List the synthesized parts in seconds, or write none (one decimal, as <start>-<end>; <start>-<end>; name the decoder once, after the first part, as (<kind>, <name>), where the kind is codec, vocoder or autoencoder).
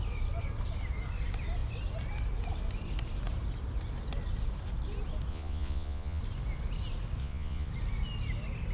5.3-6.2 (vocoder, Vocos); 7.2-7.7